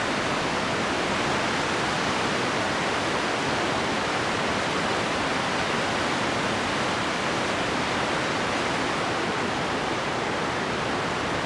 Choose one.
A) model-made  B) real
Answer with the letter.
B